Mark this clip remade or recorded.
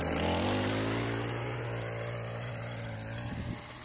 recorded